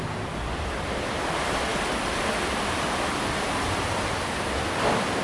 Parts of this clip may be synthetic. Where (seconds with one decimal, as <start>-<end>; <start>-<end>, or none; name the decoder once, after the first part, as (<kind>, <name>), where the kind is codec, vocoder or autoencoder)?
none